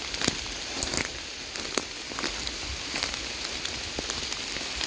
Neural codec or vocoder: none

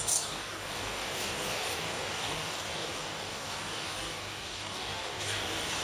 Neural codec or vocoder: codec, DAC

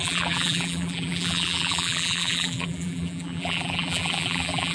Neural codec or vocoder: vocoder, BigVGAN v2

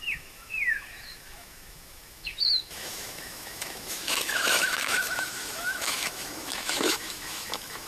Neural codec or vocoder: autoencoder, DAC-VAE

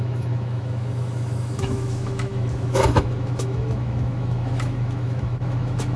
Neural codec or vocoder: autoencoder, DAC-VAE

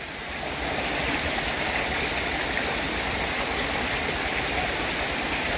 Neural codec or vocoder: none